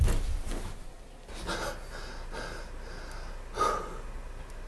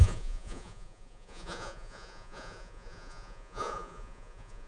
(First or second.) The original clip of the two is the first